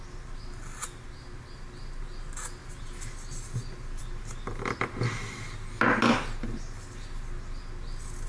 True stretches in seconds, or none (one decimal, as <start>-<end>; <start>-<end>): 0.0-8.3